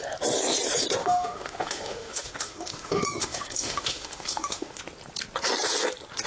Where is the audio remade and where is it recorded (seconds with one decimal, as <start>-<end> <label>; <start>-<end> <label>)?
0.0-1.0 recorded; 1.0-4.8 remade; 4.8-6.3 recorded